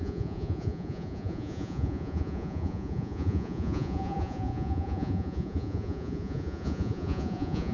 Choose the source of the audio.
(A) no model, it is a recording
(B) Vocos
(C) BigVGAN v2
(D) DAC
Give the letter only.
B